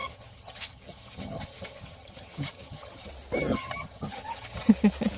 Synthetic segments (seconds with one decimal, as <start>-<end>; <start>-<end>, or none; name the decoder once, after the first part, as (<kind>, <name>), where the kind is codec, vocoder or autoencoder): 0.0-3.1 (vocoder, HiFi-GAN); 3.5-4.7